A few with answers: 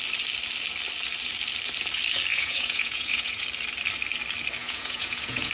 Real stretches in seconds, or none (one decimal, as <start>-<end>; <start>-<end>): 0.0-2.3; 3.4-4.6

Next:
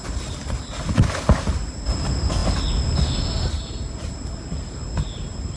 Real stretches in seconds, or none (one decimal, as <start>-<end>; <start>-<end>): 0.0-5.6

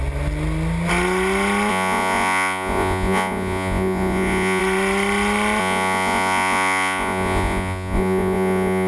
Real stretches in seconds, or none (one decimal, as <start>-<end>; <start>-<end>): 0.0-1.7; 4.6-5.6

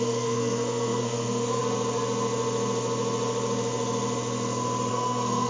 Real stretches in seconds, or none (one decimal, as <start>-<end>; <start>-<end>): 1.6-4.9

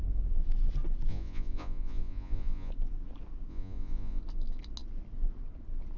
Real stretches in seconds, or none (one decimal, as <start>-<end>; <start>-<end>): 0.0-1.1; 2.7-3.5; 4.2-6.0